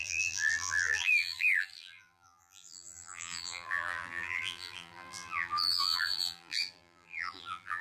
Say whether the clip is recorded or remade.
remade